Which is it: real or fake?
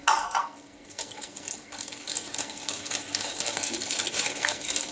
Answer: fake